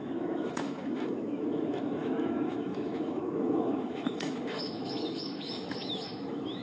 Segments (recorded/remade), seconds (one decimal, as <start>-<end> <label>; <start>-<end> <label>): 0.0-6.6 remade